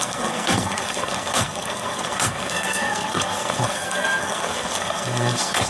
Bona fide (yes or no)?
no